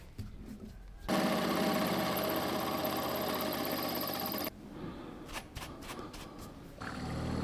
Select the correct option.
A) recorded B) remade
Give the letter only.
A